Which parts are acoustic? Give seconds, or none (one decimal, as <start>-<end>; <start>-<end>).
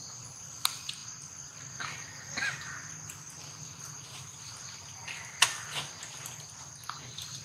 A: 0.0-7.4